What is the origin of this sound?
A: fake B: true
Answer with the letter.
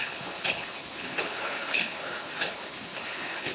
A